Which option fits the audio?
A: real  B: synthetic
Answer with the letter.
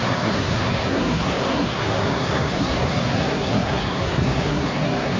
B